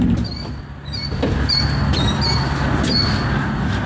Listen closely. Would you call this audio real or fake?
real